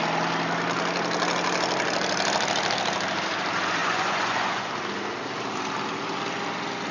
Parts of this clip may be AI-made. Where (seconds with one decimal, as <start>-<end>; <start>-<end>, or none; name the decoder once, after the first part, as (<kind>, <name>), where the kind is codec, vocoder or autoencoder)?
3.8-4.7 (vocoder, Vocos)